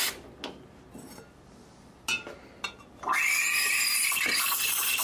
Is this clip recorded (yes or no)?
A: yes